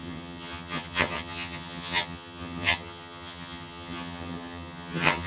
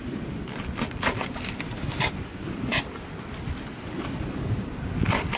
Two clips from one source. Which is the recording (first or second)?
second